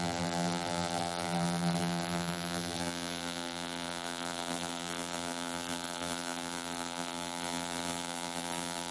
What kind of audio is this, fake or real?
fake